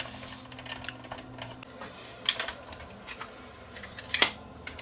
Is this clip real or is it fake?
real